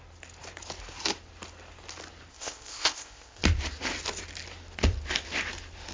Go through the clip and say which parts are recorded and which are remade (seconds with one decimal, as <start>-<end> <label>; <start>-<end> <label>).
0.0-2.3 recorded; 2.3-3.4 remade; 3.4-5.9 recorded